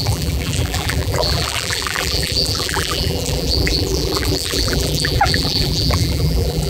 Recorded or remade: remade